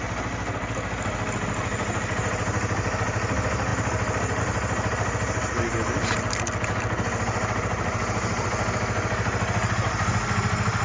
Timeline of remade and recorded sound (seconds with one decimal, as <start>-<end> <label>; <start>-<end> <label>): 0.0-10.8 recorded